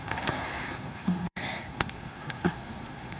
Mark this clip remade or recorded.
remade